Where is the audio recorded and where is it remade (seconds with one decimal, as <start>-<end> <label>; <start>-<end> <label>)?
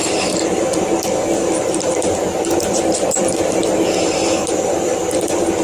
0.0-5.6 recorded